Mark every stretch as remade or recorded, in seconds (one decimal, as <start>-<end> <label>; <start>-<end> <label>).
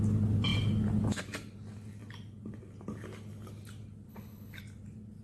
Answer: 0.0-4.1 recorded; 4.1-4.6 remade; 4.6-5.2 recorded